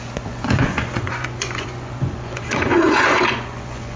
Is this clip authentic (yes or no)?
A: no